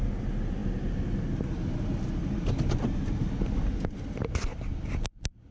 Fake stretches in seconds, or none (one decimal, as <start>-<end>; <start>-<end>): 2.2-3.3